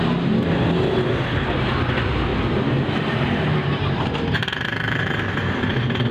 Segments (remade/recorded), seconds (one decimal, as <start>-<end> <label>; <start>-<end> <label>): 0.0-2.3 recorded; 2.3-6.1 remade